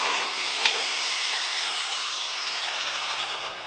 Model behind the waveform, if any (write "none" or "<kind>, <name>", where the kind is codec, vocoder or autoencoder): codec, SNAC